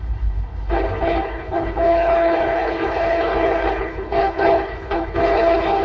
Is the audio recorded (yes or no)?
no